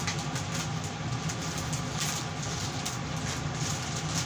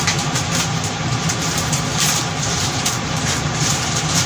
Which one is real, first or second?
first